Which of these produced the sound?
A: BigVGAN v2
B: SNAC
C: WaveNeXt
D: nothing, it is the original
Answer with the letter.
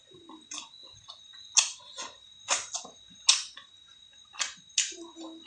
D